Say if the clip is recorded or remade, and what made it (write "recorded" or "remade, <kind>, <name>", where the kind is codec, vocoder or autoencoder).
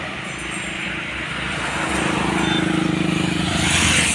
recorded